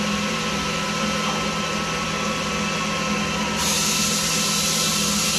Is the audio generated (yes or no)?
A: no